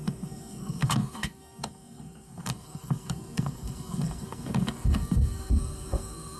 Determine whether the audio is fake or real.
fake